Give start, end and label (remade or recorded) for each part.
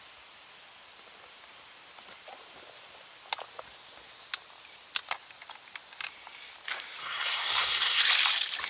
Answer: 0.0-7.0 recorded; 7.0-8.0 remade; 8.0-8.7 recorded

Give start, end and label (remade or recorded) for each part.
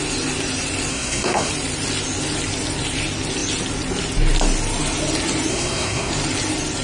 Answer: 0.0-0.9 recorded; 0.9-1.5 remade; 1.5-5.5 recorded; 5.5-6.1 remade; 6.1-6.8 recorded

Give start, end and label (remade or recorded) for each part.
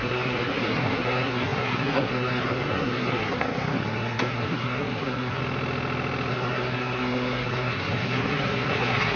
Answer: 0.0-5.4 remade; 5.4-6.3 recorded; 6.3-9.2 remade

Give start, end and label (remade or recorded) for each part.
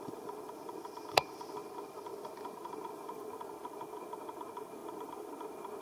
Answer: 0.0-5.8 recorded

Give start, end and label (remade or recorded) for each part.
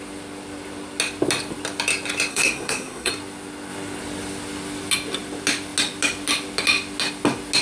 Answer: 0.0-2.3 recorded; 2.3-3.1 remade; 3.1-7.6 recorded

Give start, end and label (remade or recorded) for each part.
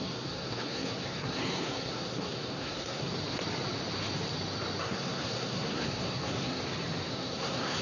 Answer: 0.0-3.1 remade; 3.1-4.8 recorded; 4.8-6.6 remade; 6.6-7.1 recorded; 7.1-7.8 remade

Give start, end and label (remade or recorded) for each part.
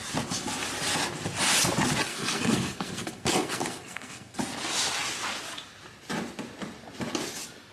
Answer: 0.0-2.1 recorded; 2.1-4.4 remade; 4.4-7.7 recorded